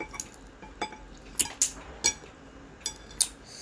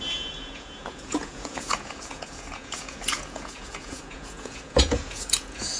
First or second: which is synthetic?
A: second